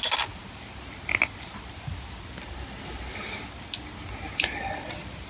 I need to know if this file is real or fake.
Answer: real